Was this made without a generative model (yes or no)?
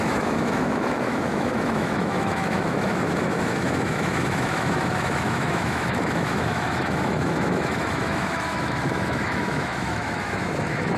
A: no